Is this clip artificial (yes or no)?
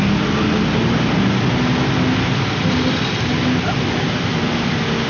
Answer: no